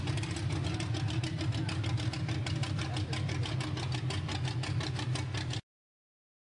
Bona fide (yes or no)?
yes